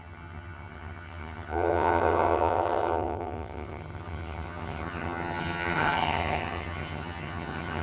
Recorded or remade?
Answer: remade